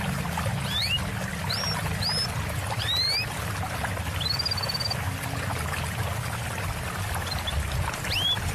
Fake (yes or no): no